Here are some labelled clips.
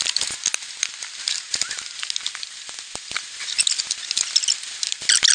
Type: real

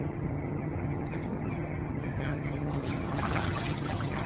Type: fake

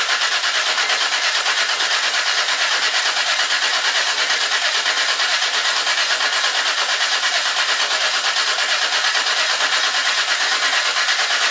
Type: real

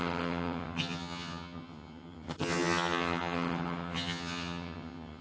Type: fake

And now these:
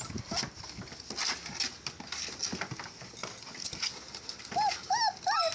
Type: real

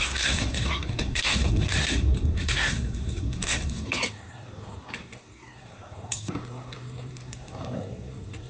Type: fake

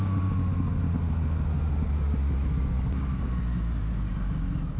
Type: real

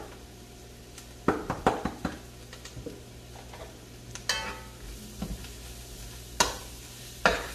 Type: real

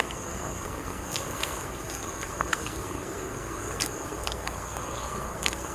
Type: fake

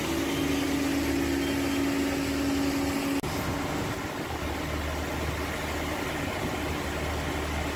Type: real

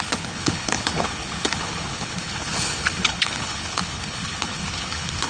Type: fake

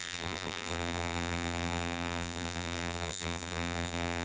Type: fake